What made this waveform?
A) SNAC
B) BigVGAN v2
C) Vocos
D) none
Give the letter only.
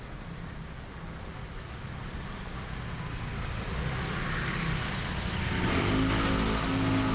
D